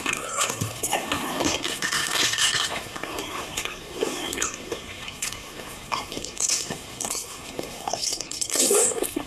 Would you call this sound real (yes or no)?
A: no